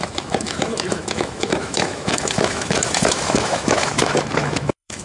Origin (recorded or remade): remade